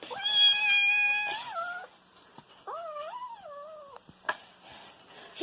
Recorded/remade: recorded